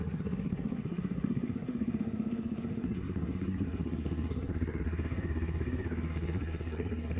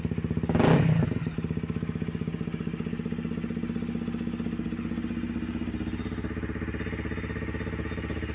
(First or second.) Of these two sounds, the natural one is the second